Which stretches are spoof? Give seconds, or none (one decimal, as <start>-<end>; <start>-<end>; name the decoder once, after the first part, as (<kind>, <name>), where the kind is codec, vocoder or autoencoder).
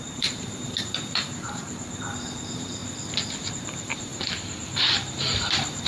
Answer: 0.0-2.8 (vocoder, BigVGAN v2); 3.5-4.1; 5.2-5.9